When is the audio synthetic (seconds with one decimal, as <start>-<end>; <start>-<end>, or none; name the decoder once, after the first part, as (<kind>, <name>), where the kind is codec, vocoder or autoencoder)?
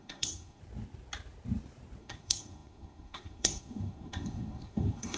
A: 0.0-0.6 (codec, SNAC); 2.0-5.2